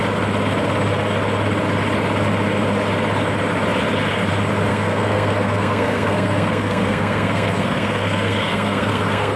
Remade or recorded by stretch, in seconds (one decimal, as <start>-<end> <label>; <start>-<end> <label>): 0.0-4.7 recorded; 4.7-9.4 remade